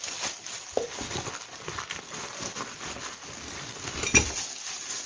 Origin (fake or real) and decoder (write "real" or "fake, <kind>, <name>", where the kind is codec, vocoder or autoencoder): real